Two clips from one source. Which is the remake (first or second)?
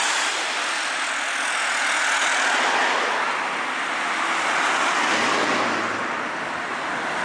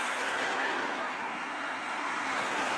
second